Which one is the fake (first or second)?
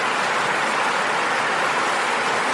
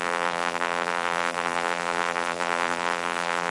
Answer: second